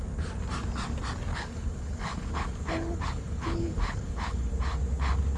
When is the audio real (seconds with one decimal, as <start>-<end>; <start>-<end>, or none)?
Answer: 0.0-1.3; 4.5-5.4